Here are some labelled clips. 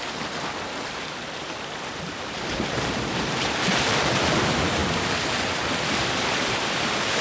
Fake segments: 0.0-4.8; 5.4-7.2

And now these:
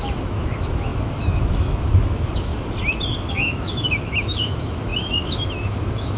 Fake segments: 0.0-2.5; 3.3-6.2